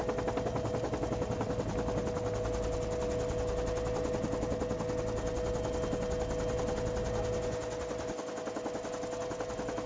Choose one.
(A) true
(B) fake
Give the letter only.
A